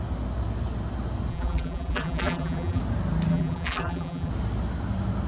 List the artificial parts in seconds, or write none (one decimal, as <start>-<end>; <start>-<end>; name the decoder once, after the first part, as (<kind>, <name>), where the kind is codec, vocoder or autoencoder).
1.3-2.8 (vocoder, BigVGAN v2); 3.3-4.3